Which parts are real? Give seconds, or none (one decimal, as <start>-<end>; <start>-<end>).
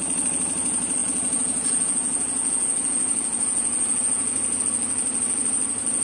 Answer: 0.0-1.0; 4.6-6.0